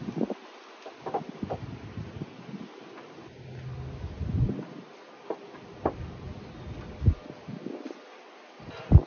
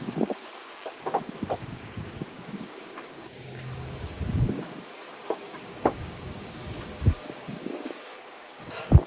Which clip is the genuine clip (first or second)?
first